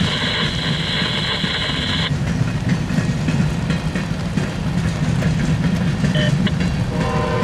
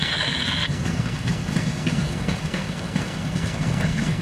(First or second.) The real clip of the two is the first